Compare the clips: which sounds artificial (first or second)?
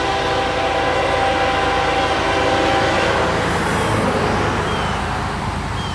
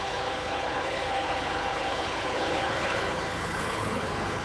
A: second